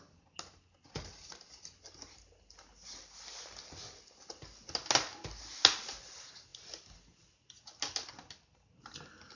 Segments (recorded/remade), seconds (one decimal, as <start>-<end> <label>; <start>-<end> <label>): 0.0-9.4 recorded

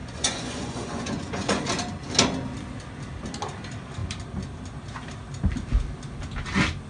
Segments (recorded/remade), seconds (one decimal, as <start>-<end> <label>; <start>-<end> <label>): 0.0-1.6 remade; 1.6-6.9 recorded

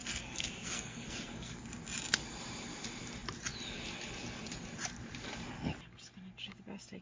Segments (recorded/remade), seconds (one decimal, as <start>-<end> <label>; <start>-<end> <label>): 0.0-1.6 remade; 1.6-7.0 recorded